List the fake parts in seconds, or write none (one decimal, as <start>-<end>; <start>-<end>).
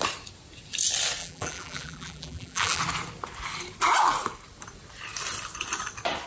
1.2-2.8